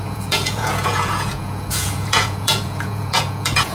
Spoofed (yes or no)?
yes